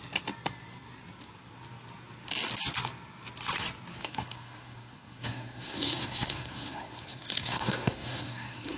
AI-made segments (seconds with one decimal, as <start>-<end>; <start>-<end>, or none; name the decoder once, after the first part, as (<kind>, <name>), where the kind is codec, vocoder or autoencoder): 4.0-8.8 (codec, SNAC)

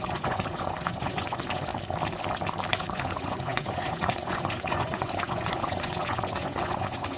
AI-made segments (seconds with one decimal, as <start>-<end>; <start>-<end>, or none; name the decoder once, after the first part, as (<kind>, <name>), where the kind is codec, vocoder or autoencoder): 0.0-1.7 (vocoder, Vocos); 2.7-7.2

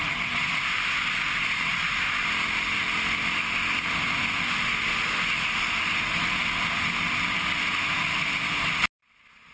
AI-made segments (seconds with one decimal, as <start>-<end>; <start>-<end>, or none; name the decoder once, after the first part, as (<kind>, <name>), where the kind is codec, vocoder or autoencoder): none